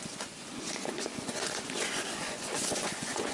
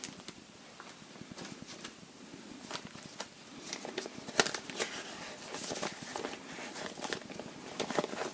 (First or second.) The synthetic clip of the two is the first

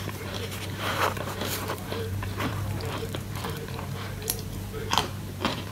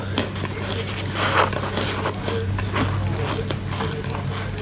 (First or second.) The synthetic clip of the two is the first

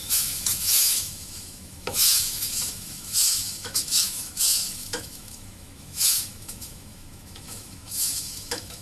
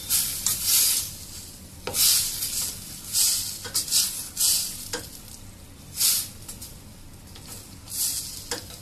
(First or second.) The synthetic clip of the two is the first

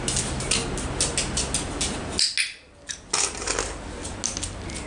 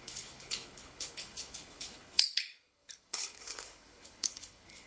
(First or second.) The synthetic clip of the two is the second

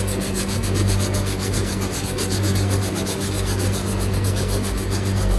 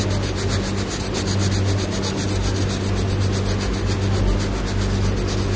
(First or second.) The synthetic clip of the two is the first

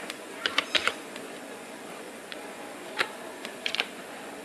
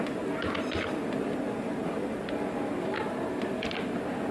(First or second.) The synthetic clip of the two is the first